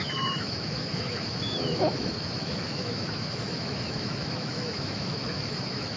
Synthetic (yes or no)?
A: yes